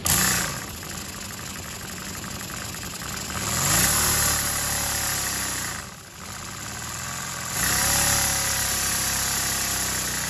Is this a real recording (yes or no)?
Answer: yes